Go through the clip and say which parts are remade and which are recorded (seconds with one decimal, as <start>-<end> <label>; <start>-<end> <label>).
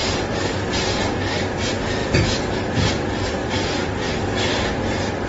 0.0-0.7 remade; 0.7-2.0 recorded; 2.0-2.9 remade; 2.9-3.4 recorded; 3.4-4.2 remade; 4.2-5.3 recorded